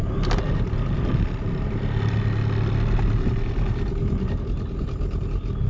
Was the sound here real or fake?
real